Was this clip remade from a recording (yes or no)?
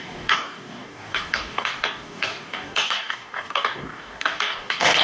yes